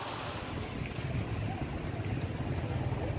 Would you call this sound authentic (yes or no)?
yes